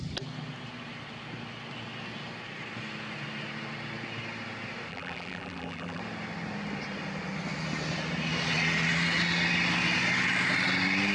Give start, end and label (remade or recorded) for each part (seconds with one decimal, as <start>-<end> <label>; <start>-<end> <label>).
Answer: 0.0-4.9 recorded; 4.9-6.0 remade; 6.0-11.1 recorded